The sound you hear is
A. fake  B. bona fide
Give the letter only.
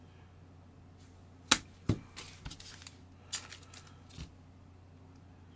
B